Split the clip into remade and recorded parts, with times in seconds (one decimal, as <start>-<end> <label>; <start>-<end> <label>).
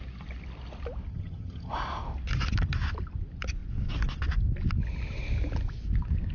0.0-1.1 recorded; 1.1-1.7 remade; 1.7-6.3 recorded